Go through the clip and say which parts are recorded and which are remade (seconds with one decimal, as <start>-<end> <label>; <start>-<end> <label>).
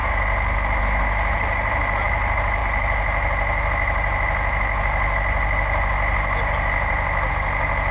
0.0-7.9 recorded